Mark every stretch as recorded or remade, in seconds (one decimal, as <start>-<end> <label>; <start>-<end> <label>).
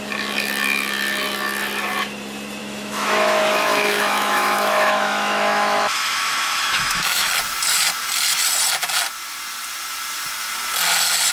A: 0.0-2.6 recorded; 2.6-7.3 remade; 7.3-11.3 recorded